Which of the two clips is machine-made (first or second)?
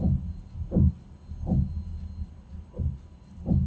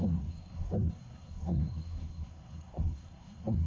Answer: second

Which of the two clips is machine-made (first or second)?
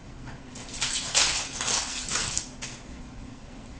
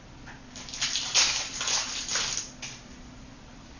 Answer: first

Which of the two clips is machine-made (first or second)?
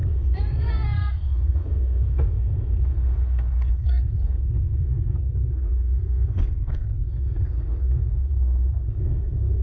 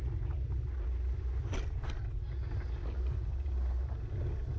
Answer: first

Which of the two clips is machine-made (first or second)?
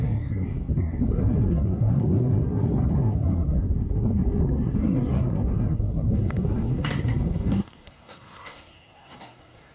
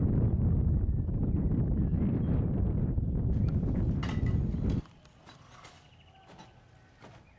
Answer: first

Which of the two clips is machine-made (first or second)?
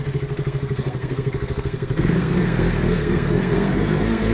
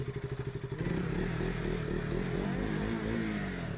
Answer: first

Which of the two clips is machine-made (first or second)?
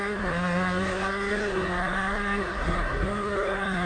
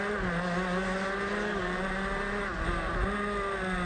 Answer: first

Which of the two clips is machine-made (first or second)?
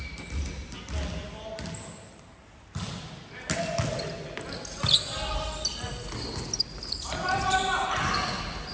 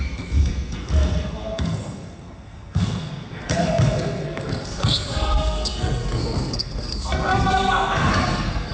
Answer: second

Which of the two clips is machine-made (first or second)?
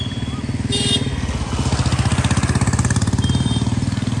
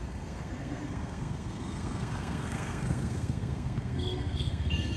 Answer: second